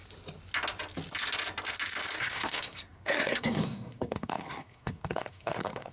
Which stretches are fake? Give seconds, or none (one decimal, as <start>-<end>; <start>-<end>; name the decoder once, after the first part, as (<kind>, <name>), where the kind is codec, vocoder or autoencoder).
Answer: 2.2-5.9 (codec, SNAC)